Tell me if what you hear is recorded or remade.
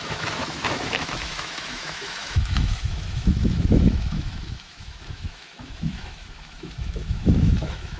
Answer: remade